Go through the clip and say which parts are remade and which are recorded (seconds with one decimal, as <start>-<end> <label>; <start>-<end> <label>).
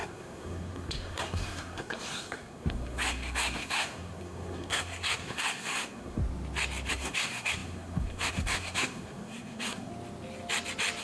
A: 0.0-6.2 remade; 6.2-6.9 recorded; 6.9-9.9 remade; 9.9-11.0 recorded